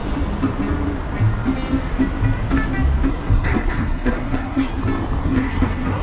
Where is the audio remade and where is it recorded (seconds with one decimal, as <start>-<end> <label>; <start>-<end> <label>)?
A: 0.0-3.1 recorded; 3.1-4.7 remade; 4.7-5.2 recorded; 5.2-6.0 remade